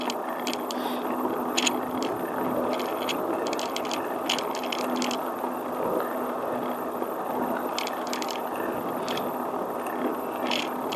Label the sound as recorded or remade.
recorded